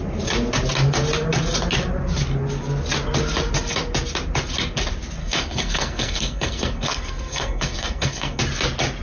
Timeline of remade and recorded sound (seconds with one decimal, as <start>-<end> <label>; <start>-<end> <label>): 0.0-5.2 recorded; 5.2-8.4 remade; 8.4-9.0 recorded